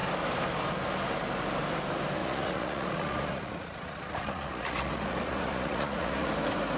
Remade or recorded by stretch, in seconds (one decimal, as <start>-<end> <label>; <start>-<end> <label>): 0.0-2.2 recorded; 2.2-6.3 remade; 6.3-6.8 recorded